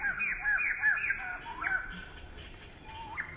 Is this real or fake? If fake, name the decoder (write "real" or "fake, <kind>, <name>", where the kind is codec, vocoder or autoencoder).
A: real